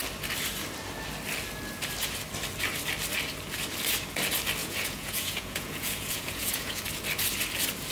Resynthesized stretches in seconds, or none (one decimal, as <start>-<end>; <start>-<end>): 4.6-6.8